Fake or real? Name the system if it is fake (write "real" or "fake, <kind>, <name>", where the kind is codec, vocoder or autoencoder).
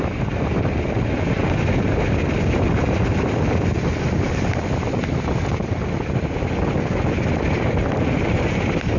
real